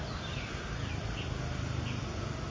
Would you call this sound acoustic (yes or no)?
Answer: yes